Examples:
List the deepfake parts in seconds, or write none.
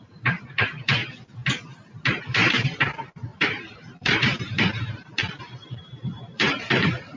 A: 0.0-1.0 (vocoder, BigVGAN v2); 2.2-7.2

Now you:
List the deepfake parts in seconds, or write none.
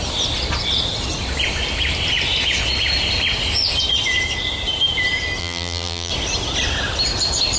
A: 5.4-6.1 (vocoder, BigVGAN v2)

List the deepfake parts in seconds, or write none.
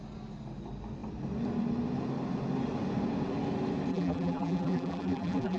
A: 3.9-5.6 (vocoder, BigVGAN v2)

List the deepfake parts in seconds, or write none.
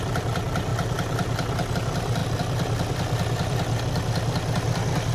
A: none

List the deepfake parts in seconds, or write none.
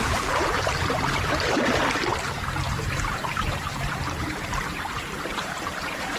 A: 0.0-6.2 (vocoder, BigVGAN v2)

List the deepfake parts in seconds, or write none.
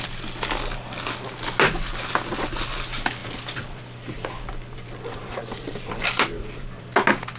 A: 3.2-6.8 (vocoder, BigVGAN v2)